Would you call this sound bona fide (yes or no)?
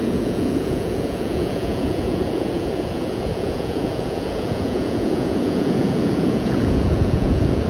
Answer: no